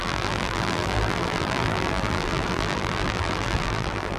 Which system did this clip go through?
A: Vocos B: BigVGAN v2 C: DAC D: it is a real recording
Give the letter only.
B